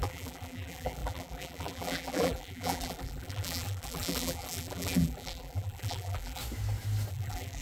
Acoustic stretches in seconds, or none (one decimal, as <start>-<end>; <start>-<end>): 6.4-7.1